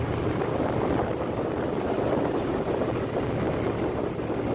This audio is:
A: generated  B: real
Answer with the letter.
B